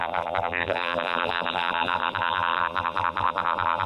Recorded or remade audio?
remade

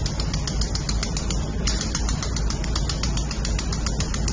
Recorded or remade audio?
recorded